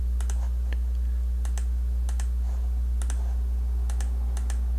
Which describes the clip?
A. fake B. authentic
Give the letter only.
B